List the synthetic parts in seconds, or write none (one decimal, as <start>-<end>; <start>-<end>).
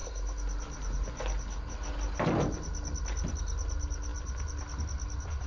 none